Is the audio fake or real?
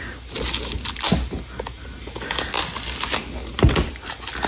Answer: real